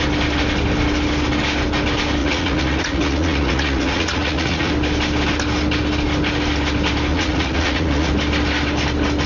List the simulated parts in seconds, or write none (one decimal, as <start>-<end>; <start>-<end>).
2.2-4.7; 7.1-8.1